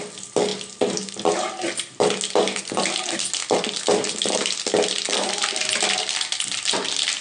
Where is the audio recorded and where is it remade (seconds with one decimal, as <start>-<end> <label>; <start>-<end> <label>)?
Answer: 0.0-7.2 recorded